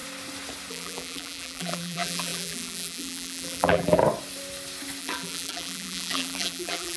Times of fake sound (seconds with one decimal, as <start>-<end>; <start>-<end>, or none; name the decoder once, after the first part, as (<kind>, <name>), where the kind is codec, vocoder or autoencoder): 0.7-4.0 (vocoder, BigVGAN v2); 5.0-7.0